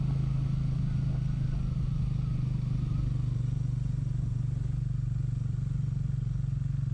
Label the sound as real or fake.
real